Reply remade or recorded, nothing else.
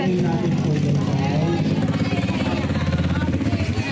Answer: recorded